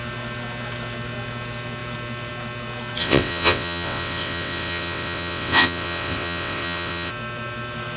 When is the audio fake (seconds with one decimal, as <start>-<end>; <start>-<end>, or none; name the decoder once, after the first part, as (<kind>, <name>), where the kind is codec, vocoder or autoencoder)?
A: 3.0-7.1 (vocoder, WaveNeXt)